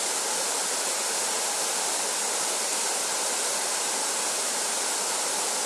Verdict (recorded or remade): recorded